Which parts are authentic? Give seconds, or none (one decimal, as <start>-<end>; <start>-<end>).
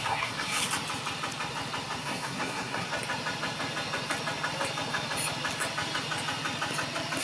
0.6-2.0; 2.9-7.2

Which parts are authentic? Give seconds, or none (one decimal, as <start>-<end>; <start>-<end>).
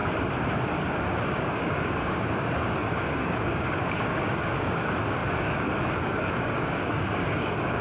0.0-0.6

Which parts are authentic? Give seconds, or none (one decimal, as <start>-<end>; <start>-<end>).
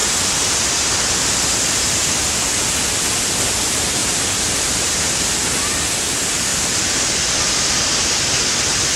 0.0-4.0; 4.9-9.0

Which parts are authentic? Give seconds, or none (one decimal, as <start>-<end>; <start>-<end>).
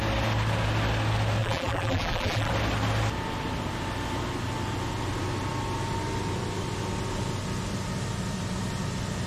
0.0-1.4; 2.5-9.3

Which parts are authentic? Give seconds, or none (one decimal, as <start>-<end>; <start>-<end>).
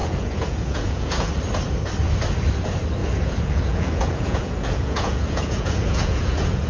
1.3-3.0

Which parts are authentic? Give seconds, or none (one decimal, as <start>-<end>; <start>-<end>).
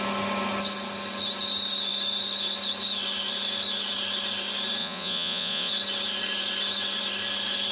0.0-4.8; 5.7-7.7